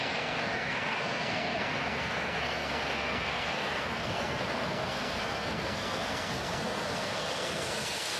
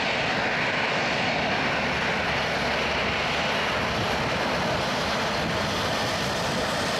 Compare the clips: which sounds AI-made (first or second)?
first